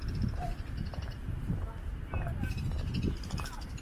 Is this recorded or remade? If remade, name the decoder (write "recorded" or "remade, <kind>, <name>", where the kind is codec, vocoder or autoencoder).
recorded